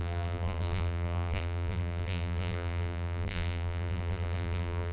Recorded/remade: remade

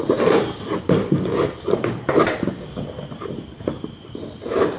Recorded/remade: remade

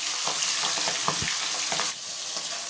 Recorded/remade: recorded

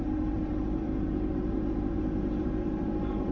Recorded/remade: remade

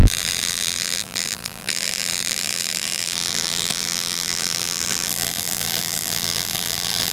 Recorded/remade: remade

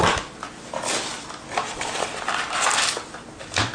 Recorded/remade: recorded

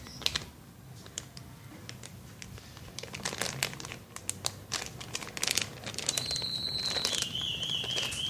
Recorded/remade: recorded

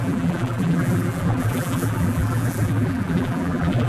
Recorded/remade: remade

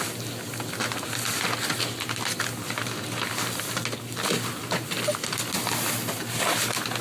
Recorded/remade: recorded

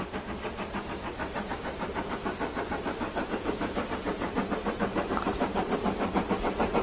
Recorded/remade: remade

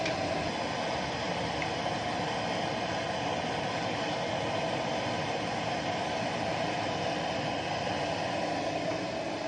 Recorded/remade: recorded